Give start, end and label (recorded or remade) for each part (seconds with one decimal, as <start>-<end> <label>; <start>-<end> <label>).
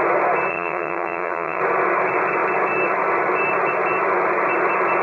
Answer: 0.0-0.5 recorded; 0.5-1.6 remade; 1.6-5.0 recorded